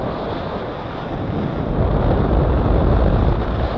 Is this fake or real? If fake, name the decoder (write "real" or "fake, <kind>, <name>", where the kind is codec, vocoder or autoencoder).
real